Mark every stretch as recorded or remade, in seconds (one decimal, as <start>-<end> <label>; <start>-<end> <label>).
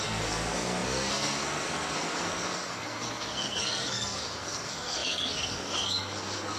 0.0-6.6 remade